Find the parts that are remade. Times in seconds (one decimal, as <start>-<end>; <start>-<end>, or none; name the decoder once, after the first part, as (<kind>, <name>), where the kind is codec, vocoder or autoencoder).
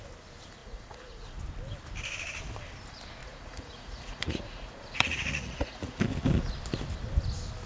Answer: 0.6-1.4 (vocoder, Vocos); 3.2-6.0